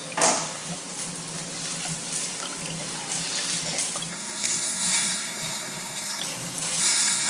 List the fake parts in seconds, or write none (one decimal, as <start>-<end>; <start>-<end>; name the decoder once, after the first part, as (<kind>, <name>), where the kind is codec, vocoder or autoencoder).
4.1-6.2 (codec, SNAC); 6.8-7.3